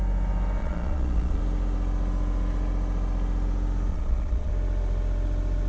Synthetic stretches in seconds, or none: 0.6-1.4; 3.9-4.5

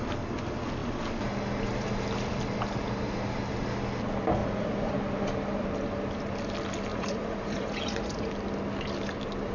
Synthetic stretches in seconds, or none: 4.4-4.9; 6.9-8.3

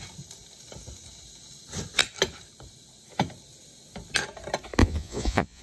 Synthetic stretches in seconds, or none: 4.8-5.6

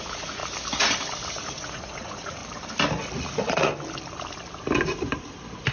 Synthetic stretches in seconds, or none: 0.0-0.4; 1.3-2.4; 3.2-3.7